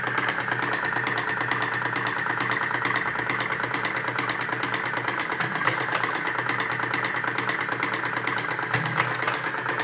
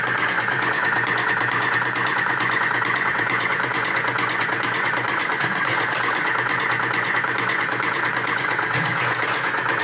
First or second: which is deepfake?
second